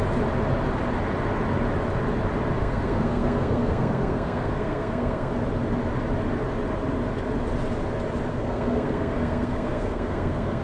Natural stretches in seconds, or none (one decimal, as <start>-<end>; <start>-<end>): 0.0-2.6; 5.3-8.3